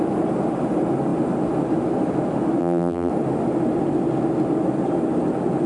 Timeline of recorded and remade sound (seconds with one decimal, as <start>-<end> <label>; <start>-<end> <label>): 0.0-2.6 recorded; 2.6-3.1 remade; 3.1-5.7 recorded